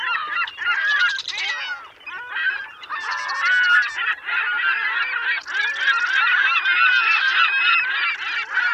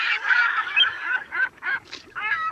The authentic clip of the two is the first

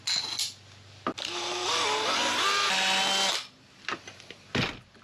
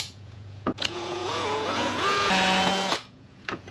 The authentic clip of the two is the first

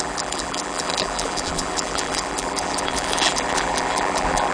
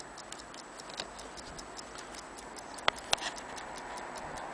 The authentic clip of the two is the second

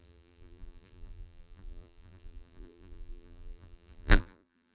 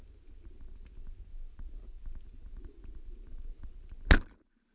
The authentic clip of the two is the second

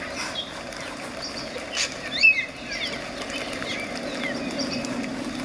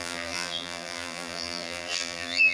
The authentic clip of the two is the first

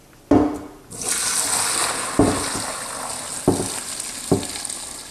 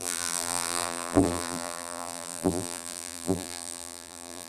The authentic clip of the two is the first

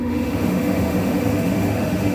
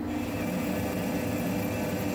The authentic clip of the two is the second